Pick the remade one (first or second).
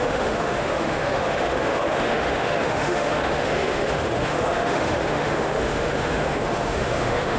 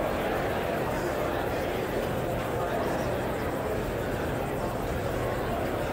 first